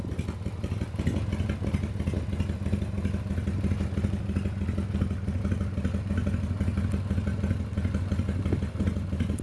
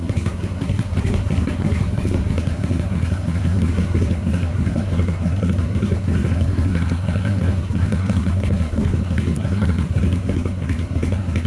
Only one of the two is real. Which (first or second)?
first